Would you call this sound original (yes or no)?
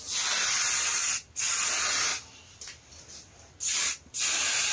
yes